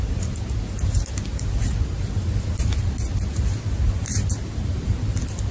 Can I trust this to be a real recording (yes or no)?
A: yes